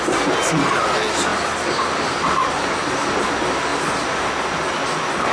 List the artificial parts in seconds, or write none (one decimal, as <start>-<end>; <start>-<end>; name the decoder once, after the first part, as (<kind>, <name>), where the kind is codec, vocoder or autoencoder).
none

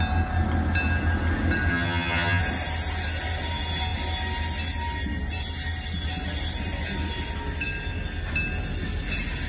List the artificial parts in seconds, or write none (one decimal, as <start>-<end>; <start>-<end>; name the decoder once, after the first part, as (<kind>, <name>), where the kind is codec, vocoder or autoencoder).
1.7-2.4 (vocoder, HiFi-GAN)

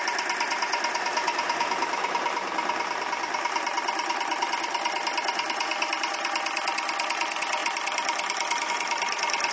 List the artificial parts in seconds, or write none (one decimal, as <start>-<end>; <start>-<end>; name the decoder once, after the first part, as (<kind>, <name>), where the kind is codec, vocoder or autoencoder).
none

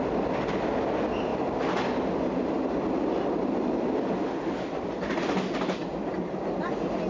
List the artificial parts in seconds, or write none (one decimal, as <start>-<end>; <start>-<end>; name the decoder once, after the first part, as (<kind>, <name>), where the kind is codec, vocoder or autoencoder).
none

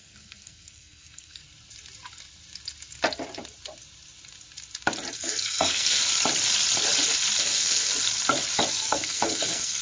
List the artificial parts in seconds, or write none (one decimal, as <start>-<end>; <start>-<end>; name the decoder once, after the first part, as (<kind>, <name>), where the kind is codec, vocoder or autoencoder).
0.0-1.4 (codec, SNAC); 5.1-6.0; 7.5-7.9; 8.7-9.8

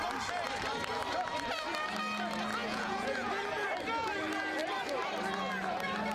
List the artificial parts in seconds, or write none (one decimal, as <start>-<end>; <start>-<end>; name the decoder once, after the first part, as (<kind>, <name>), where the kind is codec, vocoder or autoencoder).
2.6-3.3 (vocoder, Vocos)

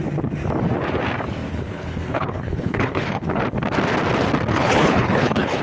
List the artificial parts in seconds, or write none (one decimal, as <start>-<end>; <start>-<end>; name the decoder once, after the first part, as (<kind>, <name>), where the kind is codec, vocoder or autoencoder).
1.5-3.4 (codec, HILCodec); 4.5-5.6

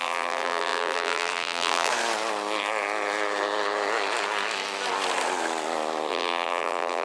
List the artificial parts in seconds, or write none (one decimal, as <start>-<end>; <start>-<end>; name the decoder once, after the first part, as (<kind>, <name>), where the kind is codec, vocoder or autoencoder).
0.0-1.9 (vocoder, BigVGAN v2); 6.1-7.0